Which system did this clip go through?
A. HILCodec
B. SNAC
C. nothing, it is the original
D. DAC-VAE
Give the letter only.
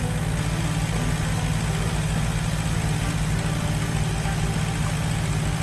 C